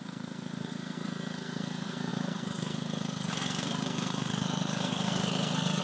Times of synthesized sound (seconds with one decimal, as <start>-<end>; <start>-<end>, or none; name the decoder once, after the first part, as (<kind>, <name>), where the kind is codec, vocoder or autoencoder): 0.0-5.8 (codec, SNAC)